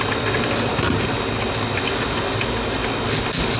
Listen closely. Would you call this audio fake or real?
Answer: real